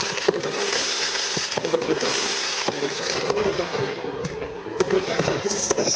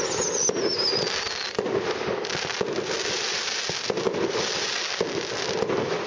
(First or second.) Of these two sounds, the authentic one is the second